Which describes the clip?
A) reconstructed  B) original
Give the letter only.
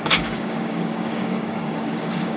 A